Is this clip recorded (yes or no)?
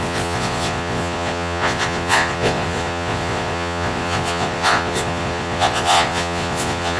no